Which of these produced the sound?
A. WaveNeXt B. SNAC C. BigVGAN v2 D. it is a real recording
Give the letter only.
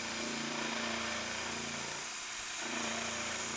C